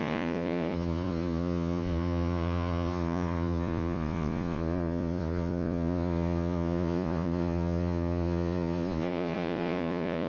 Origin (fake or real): fake